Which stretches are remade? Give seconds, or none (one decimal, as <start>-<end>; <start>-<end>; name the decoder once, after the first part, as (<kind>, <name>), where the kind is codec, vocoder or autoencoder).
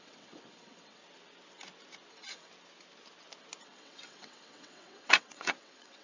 0.0-1.0 (vocoder, WaveNeXt); 2.1-2.5; 3.6-6.0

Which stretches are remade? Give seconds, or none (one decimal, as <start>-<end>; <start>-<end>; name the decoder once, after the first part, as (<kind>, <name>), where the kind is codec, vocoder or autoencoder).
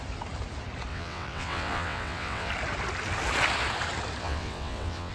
0.9-2.5 (vocoder, WaveNeXt); 4.2-5.1